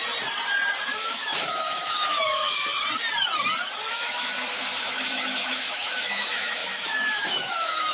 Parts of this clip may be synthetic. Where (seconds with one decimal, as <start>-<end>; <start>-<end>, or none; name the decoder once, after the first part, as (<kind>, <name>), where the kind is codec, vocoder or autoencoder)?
0.9-2.7 (autoencoder, DAC-VAE); 3.9-7.9